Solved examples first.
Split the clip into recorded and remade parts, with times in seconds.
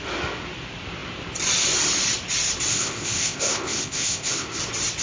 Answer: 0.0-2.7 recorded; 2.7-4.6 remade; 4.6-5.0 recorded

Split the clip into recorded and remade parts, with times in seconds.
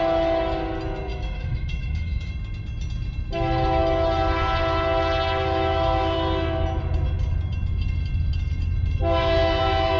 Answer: 0.0-1.1 recorded; 1.1-2.3 remade; 2.3-10.0 recorded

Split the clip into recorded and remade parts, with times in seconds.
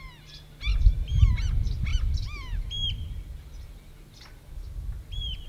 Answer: 0.0-5.5 recorded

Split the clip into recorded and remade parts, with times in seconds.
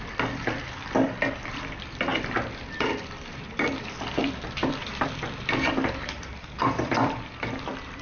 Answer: 0.0-8.0 remade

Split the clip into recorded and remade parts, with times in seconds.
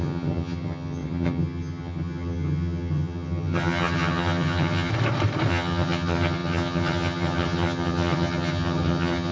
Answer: 0.0-4.9 remade; 4.9-5.5 recorded; 5.5-9.3 remade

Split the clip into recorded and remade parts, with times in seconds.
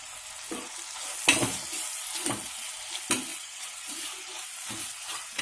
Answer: 0.0-3.3 recorded; 3.3-3.9 remade; 3.9-4.8 recorded; 4.8-5.4 remade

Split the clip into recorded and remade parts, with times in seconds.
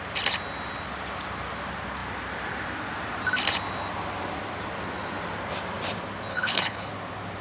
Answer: 0.0-6.3 recorded; 6.3-6.9 remade; 6.9-7.4 recorded